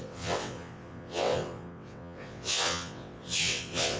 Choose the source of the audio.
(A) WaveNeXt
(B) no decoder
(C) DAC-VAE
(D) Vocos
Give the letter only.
A